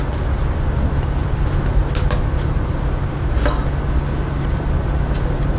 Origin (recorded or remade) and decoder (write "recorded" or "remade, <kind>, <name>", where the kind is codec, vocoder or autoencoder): recorded